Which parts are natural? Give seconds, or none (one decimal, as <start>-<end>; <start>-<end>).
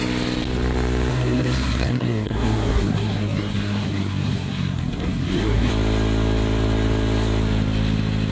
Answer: 0.0-1.1; 5.7-8.3